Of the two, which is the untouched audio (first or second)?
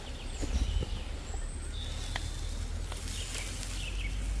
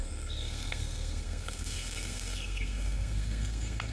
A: first